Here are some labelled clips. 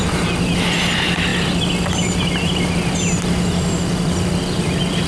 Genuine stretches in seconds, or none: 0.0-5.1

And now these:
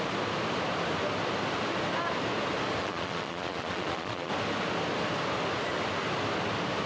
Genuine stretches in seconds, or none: 0.0-2.8; 4.3-6.9

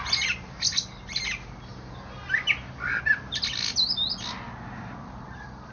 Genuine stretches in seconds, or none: 0.0-5.7

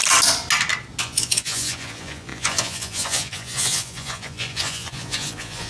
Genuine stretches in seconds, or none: 0.0-1.0

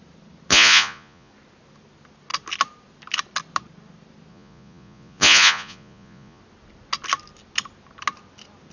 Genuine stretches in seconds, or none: 0.0-0.5; 1.3-4.3; 6.4-8.7

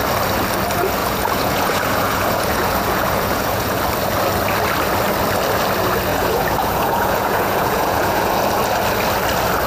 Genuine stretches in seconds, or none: 0.0-1.0; 3.8-6.1; 8.3-9.7

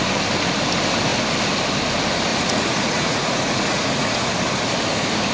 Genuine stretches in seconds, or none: 0.0-2.3; 4.3-5.3